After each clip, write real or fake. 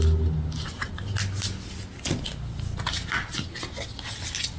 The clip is real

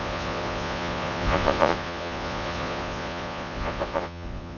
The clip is fake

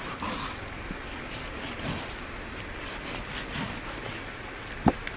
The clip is real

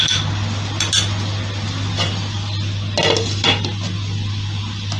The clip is real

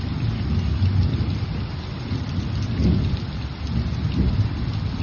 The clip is real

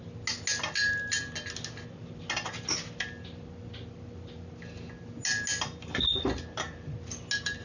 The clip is real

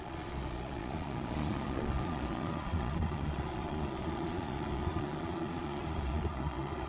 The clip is fake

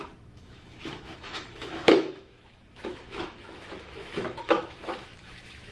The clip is fake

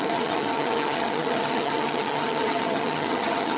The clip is fake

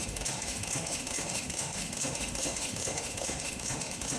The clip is fake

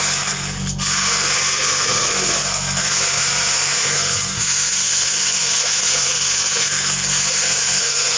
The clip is fake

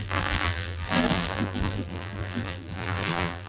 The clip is fake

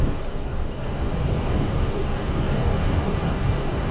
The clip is fake